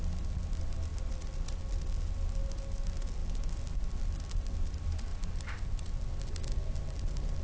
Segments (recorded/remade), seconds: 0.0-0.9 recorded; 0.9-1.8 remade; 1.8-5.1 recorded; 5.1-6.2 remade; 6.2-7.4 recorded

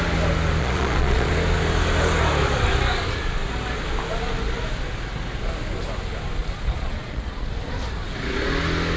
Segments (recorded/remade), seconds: 0.0-0.6 recorded; 0.6-1.3 remade; 1.3-6.4 recorded; 6.4-7.5 remade; 7.5-9.0 recorded

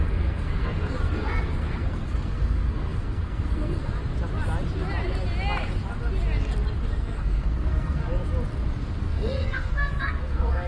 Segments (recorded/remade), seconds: 0.0-3.9 remade; 3.9-6.9 recorded; 6.9-8.0 remade; 8.0-9.0 recorded; 9.0-10.7 remade

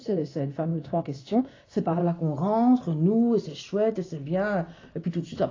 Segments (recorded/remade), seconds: 0.0-2.0 remade; 2.0-5.5 recorded

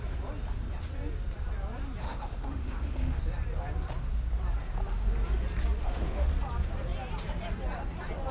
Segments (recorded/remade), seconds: 0.0-2.0 recorded; 2.0-3.2 remade; 3.2-5.8 recorded; 5.8-6.3 remade; 6.3-8.3 recorded

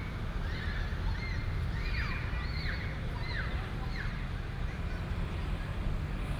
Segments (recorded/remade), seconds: 0.0-6.4 recorded